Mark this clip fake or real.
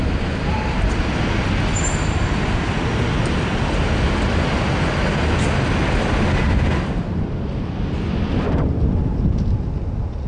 real